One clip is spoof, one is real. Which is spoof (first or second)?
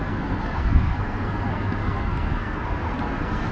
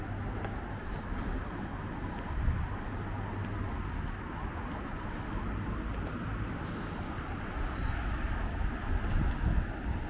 first